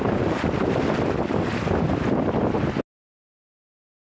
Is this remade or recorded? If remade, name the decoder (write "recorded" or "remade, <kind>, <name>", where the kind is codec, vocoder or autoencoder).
recorded